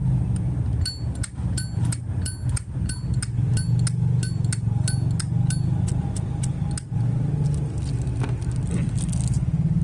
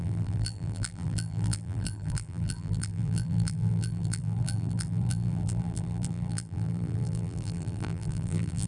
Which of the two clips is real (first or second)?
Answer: first